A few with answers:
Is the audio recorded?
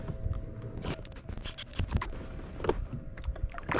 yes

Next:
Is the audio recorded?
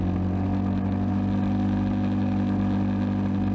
yes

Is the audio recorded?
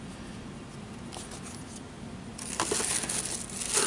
yes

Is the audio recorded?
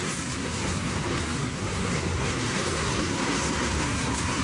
no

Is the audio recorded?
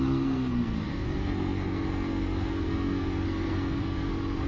no